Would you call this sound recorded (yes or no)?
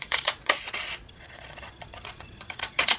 no